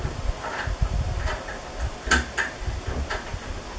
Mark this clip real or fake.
real